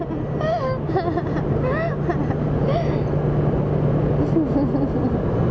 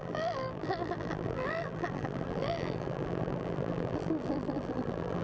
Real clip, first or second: first